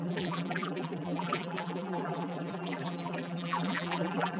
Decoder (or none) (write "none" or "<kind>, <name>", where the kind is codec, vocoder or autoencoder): vocoder, BigVGAN v2